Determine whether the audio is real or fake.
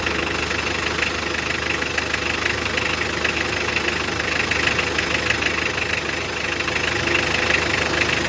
real